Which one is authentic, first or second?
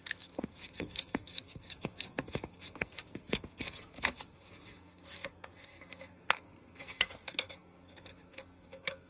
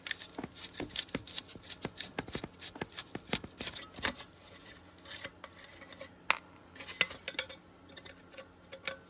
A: second